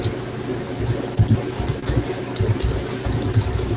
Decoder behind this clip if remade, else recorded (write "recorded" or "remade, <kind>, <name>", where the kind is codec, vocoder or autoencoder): recorded